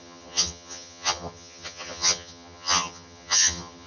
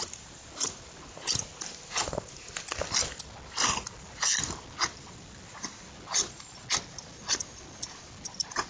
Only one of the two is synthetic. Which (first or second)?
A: first